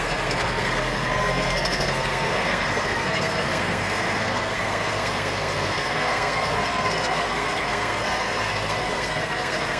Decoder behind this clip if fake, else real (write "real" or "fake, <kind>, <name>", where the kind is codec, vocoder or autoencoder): fake, codec, SNAC